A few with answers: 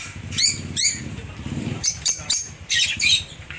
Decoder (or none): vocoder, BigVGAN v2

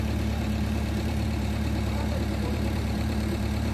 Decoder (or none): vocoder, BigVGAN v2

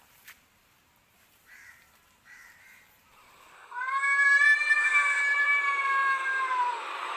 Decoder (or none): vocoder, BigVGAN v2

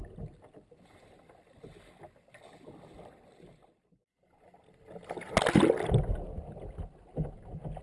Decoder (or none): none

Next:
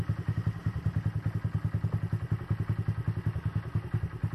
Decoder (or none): none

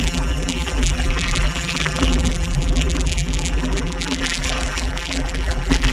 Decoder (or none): vocoder, BigVGAN v2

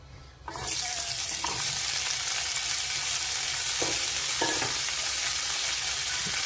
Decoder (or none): none